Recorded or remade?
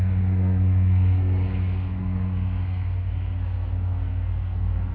remade